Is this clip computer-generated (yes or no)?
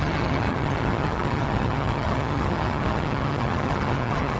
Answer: yes